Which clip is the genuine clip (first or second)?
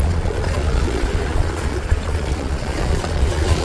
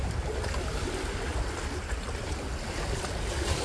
second